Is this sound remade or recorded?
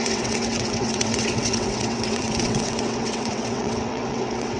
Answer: remade